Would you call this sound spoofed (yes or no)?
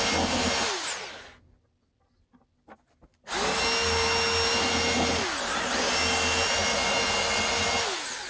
no